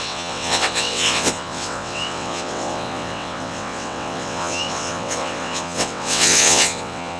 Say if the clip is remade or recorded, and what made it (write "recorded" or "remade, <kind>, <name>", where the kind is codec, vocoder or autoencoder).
remade, vocoder, WaveNeXt